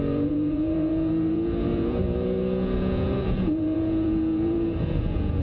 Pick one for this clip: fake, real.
fake